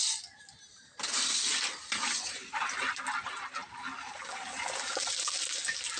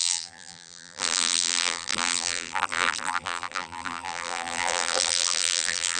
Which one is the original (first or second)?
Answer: first